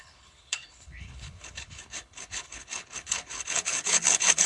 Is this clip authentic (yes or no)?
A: no